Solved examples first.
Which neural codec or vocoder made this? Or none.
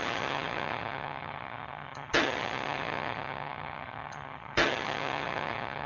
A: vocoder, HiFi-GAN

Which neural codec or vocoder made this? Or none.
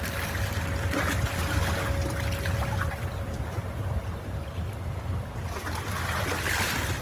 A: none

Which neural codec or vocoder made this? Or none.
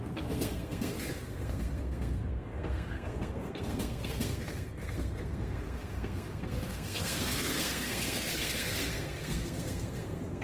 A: codec, SNAC